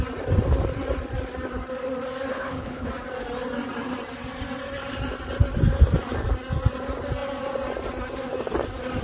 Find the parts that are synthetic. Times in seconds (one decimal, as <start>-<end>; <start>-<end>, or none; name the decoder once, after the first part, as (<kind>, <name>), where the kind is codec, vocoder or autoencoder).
2.3-2.9 (codec, HILCodec)